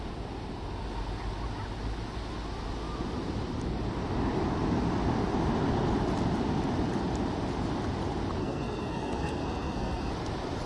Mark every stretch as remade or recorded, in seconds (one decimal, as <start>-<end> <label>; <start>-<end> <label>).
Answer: 0.0-8.4 recorded; 8.4-10.1 remade; 10.1-10.7 recorded